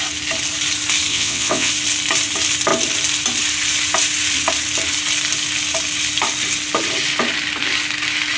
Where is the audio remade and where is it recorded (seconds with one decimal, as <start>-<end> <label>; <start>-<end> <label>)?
0.0-1.1 recorded; 1.1-1.7 remade; 1.7-8.4 recorded